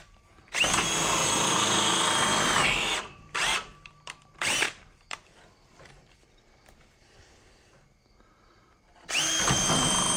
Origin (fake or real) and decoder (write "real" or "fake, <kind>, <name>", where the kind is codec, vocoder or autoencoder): fake, vocoder, BigVGAN v2